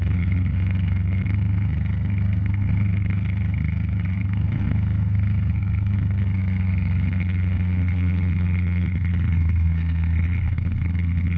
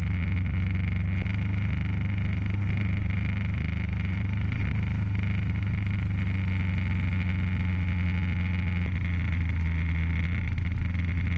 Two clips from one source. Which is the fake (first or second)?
first